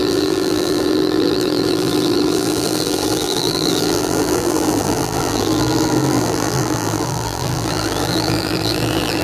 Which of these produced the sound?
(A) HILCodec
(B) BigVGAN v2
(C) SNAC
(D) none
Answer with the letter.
B